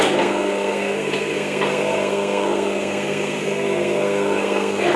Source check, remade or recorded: remade